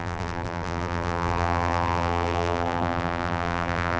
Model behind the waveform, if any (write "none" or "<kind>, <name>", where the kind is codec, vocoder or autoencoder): vocoder, BigVGAN v2